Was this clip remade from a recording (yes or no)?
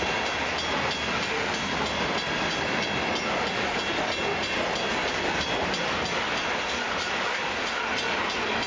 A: no